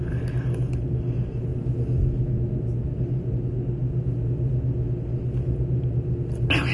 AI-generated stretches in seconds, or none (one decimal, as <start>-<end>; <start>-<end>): none